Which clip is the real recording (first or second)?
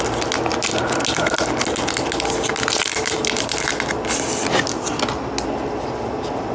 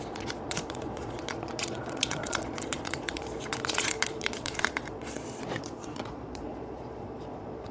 first